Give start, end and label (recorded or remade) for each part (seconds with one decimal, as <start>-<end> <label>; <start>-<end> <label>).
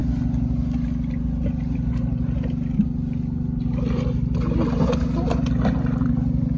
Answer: 0.0-6.6 recorded